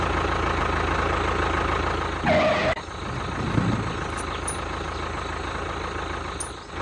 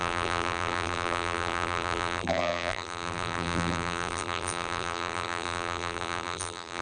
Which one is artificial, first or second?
second